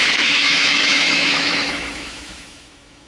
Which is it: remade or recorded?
remade